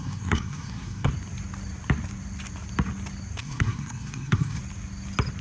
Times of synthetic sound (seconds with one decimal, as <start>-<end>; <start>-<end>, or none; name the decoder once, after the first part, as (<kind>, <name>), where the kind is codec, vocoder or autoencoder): 0.0-1.1 (codec, SNAC); 3.4-4.6